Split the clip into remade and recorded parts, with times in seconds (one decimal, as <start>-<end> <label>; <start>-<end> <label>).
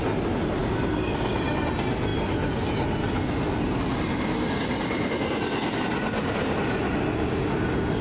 0.0-8.0 recorded